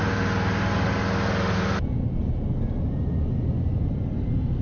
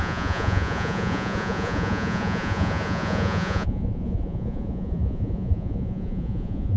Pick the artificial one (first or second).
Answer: second